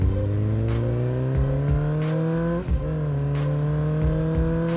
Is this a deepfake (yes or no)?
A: no